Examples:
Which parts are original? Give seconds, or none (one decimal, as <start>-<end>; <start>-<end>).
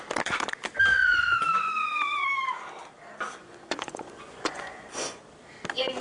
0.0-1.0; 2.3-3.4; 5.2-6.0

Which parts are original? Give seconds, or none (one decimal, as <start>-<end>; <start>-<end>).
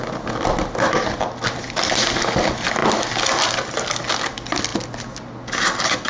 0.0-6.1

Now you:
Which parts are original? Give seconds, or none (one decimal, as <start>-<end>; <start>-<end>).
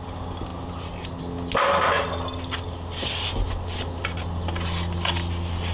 0.0-5.7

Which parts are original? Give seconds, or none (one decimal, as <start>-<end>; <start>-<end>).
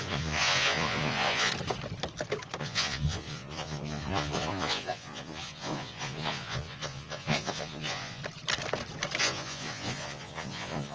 1.5-2.6; 8.2-9.2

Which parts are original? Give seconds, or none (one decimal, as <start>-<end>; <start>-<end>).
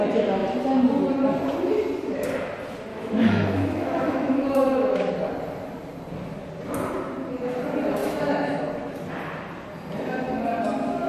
0.0-2.9; 5.1-8.0; 8.6-11.1